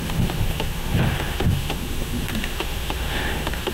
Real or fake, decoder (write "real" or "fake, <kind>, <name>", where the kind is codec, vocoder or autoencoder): fake, autoencoder, DAC-VAE